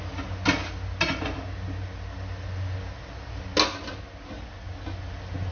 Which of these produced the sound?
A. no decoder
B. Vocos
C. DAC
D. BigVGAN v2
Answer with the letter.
A